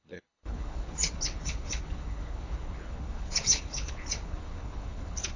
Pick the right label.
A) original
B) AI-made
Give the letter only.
B